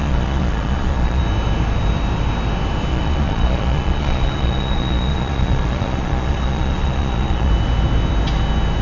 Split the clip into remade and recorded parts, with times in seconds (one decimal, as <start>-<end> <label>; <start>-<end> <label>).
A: 0.0-1.2 remade; 1.2-2.9 recorded; 2.9-7.5 remade; 7.5-8.8 recorded